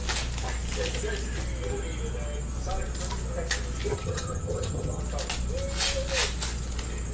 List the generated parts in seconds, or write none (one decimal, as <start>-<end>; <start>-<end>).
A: 3.9-5.0

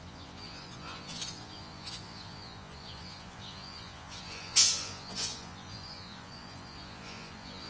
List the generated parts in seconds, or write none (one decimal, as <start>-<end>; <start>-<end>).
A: 0.0-7.7

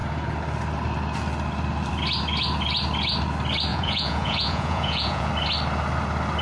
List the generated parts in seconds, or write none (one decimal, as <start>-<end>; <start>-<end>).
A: 3.7-5.3

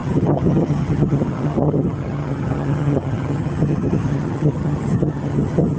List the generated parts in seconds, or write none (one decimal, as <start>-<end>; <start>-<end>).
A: 0.0-5.8

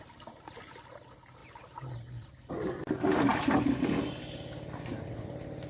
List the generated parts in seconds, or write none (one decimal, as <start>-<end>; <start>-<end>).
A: none

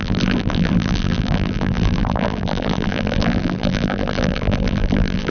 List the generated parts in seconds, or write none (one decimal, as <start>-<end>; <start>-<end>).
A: 0.0-5.3

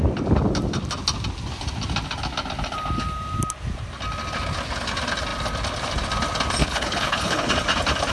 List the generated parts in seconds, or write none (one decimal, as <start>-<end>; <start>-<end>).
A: 6.6-7.5